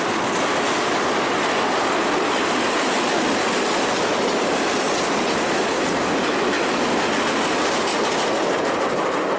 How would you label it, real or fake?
real